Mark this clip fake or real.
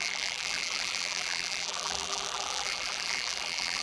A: fake